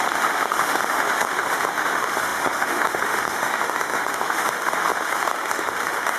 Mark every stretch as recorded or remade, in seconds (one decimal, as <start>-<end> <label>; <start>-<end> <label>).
0.0-6.2 remade